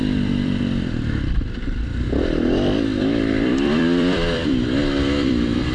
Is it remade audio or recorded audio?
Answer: remade